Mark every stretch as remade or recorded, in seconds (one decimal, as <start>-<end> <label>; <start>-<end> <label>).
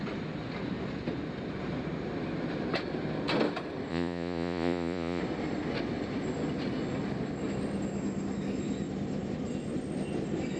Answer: 0.0-3.9 recorded; 3.9-5.2 remade; 5.2-10.6 recorded